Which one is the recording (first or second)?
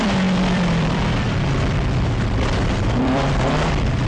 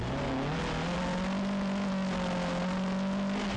second